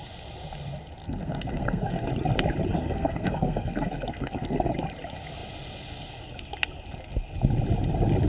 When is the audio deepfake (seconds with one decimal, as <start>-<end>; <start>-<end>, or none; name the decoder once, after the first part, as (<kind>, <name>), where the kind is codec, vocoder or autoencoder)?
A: 1.0-2.1 (codec, SNAC); 2.8-4.7